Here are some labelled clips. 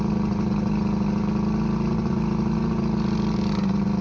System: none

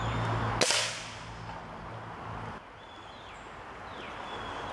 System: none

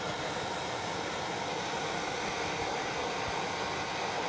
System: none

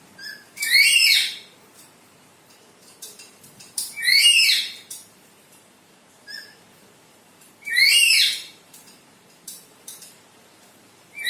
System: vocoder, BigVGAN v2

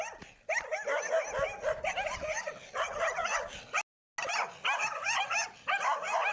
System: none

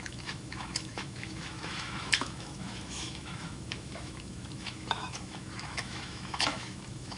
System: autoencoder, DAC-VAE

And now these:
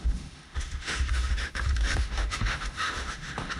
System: autoencoder, DAC-VAE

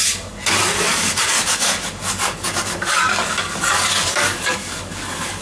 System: codec, DAC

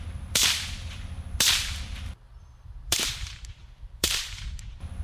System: vocoder, BigVGAN v2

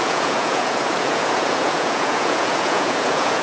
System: vocoder, Vocos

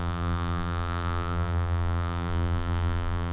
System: vocoder, BigVGAN v2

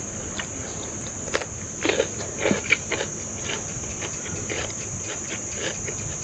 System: vocoder, BigVGAN v2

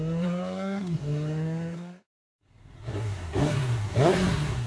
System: codec, SNAC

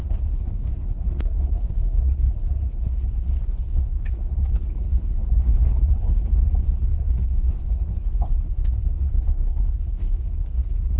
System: codec, HILCodec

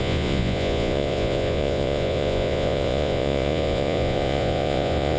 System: vocoder, Vocos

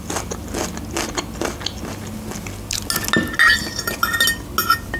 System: none